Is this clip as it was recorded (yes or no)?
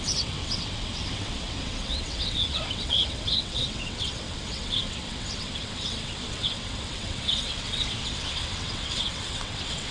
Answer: no